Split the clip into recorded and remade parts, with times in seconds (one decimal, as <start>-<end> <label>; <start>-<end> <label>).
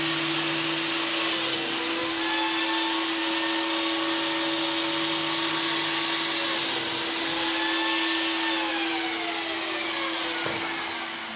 0.0-11.4 recorded